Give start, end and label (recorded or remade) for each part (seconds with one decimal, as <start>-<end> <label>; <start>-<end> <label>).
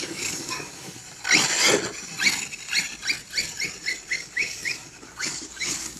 0.0-1.0 remade; 1.0-4.1 recorded; 4.1-6.0 remade